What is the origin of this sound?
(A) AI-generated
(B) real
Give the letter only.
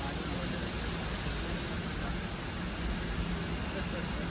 B